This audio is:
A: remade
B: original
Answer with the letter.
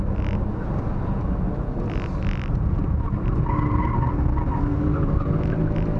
B